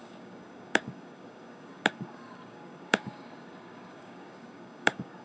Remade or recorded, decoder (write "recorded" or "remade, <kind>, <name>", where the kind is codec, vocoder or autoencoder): remade, codec, DAC